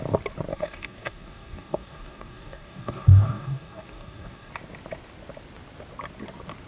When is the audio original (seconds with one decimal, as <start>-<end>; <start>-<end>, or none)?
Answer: 0.0-0.5; 4.5-6.7